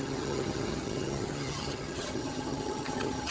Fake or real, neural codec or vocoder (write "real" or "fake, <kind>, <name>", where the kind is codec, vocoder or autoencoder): fake, vocoder, HiFi-GAN